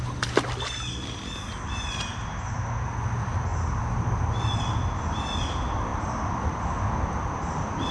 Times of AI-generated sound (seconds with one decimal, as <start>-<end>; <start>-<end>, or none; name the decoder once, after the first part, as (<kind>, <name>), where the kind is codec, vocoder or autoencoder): none